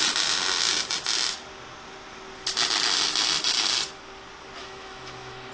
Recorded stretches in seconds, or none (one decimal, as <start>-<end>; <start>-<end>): 0.0-4.6